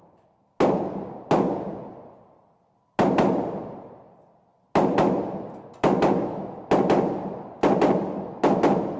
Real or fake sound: real